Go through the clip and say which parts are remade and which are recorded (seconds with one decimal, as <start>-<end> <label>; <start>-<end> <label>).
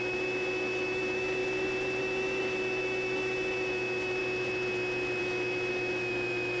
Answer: 0.0-1.4 remade; 1.4-2.0 recorded; 2.0-4.2 remade; 4.2-5.2 recorded; 5.2-6.6 remade